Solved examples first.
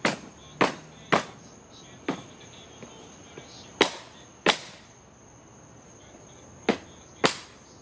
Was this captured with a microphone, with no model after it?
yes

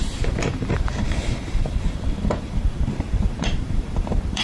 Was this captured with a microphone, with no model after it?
no